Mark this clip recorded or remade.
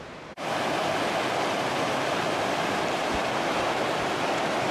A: recorded